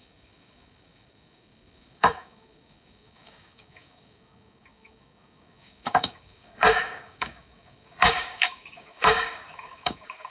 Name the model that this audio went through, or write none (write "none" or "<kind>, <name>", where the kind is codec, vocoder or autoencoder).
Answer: codec, DAC